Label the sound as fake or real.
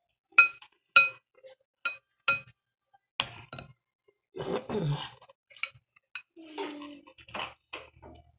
real